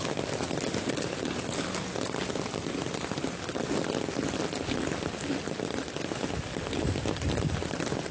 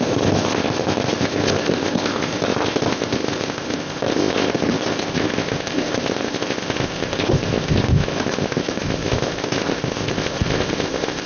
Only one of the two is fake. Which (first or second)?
second